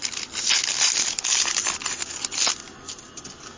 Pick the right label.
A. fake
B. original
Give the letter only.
B